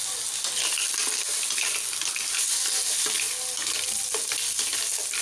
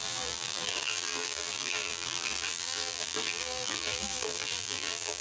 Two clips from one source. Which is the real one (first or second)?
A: first